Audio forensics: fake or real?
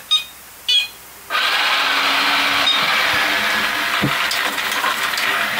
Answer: real